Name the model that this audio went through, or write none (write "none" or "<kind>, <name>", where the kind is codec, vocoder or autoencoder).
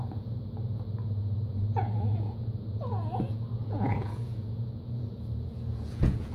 vocoder, Vocos